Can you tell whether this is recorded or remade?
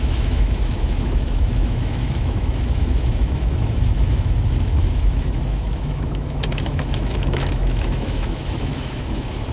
remade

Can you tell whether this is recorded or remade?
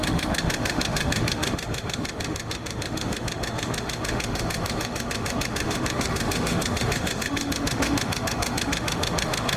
remade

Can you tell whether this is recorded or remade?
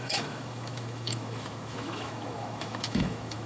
remade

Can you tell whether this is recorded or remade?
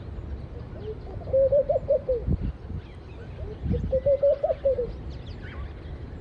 recorded